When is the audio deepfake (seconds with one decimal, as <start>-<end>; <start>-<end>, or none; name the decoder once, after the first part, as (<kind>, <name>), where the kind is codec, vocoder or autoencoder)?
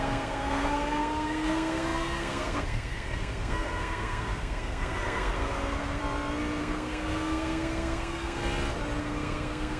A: 0.0-6.0 (codec, SNAC); 6.6-8.4; 9.0-9.8